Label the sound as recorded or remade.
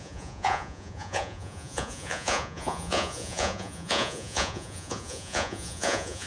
remade